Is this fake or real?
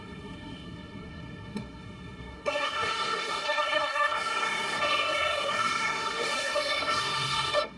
fake